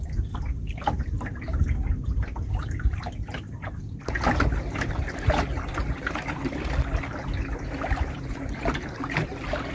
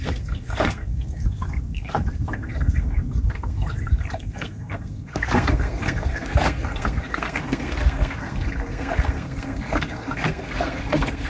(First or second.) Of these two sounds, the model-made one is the second